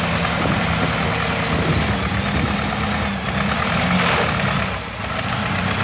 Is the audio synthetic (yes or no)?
no